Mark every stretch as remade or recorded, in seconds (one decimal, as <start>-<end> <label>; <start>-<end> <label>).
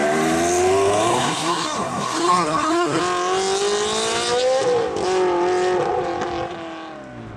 0.0-1.1 recorded; 1.1-3.0 remade; 3.0-7.4 recorded